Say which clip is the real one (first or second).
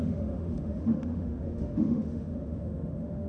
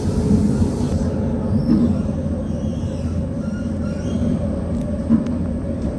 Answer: second